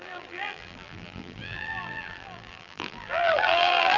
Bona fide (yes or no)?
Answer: no